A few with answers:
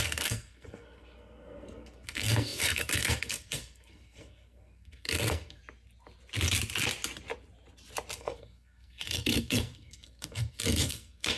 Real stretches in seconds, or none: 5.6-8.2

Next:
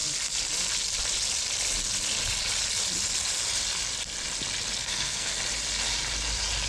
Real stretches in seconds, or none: 0.0-4.8; 5.4-6.7

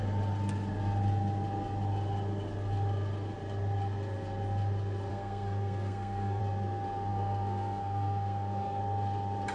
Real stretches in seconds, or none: 0.0-5.1; 6.4-7.1; 8.8-9.5

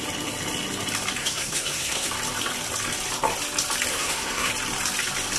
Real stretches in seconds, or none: 0.0-1.2; 2.1-3.9; 4.5-5.4

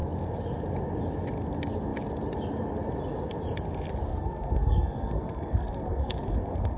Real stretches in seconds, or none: 0.0-4.1

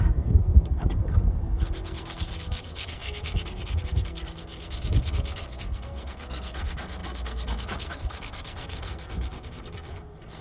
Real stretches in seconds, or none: none